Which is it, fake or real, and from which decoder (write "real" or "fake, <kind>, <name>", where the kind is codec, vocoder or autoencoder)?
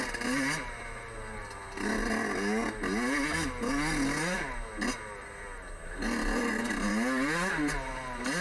real